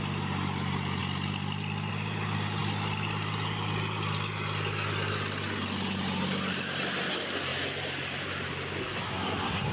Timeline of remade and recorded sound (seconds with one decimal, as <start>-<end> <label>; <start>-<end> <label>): 0.0-8.8 recorded; 8.8-9.7 remade

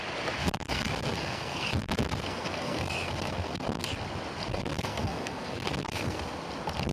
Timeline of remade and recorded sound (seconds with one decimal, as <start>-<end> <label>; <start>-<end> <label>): 0.0-0.4 recorded; 0.4-3.9 remade; 3.9-4.5 recorded; 4.5-6.2 remade; 6.2-6.9 recorded